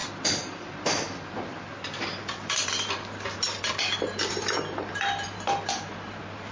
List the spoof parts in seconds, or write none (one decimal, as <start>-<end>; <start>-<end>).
none